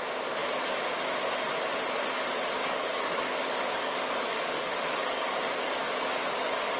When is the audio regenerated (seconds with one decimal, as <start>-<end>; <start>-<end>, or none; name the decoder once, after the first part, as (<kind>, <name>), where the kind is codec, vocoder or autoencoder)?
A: 2.6-6.8 (codec, DAC)